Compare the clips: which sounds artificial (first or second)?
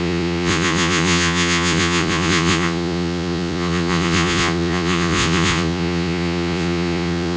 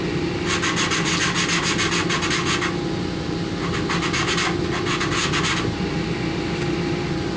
first